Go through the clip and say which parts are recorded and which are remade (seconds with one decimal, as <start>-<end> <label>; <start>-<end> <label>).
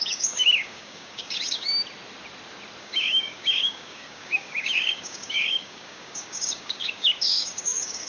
0.0-1.7 remade; 1.7-2.8 recorded; 2.8-8.1 remade